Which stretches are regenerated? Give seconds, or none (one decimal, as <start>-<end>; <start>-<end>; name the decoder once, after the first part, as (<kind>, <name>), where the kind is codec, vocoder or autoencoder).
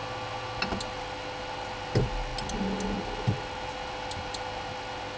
none